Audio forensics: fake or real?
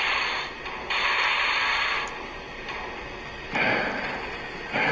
real